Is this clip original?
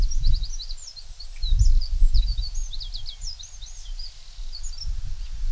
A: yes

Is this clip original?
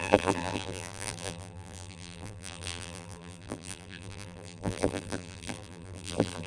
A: no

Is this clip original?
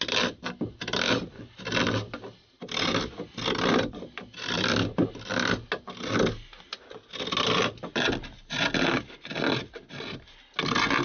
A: yes